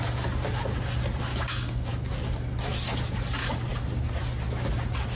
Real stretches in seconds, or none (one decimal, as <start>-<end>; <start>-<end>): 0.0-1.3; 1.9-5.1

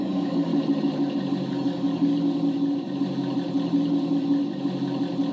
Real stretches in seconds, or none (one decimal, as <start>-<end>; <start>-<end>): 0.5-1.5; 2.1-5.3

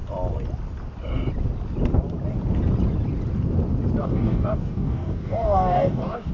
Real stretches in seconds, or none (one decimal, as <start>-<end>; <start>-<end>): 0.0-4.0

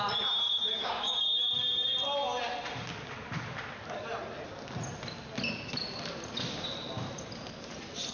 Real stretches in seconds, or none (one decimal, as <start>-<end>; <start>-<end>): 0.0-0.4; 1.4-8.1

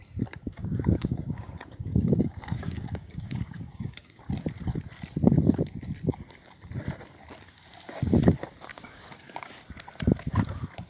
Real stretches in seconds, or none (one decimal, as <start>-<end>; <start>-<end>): 0.0-0.6; 4.2-8.7; 9.5-10.9

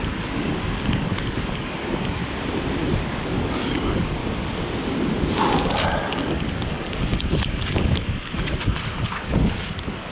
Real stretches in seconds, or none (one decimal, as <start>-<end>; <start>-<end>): 2.2-3.0; 4.2-6.0